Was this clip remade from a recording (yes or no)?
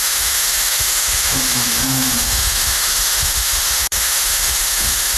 yes